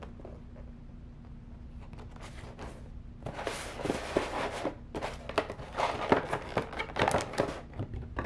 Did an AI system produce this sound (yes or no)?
no